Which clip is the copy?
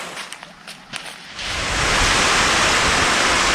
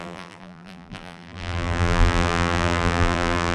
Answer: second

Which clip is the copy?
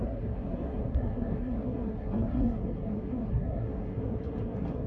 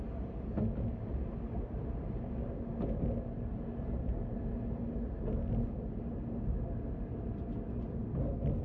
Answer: first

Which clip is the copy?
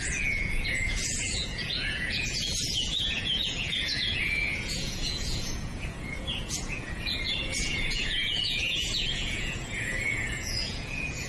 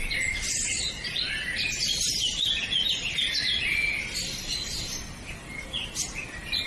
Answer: first